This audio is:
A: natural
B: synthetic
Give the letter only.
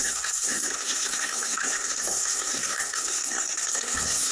B